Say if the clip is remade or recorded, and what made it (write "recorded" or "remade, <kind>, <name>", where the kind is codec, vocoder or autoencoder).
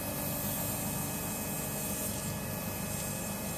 recorded